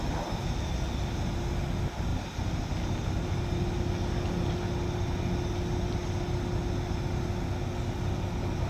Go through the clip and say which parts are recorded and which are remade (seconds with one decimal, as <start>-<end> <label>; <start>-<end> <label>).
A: 0.0-8.7 recorded